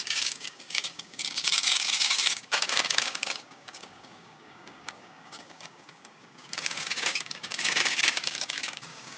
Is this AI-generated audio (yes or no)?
yes